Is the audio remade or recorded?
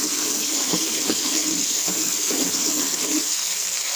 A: remade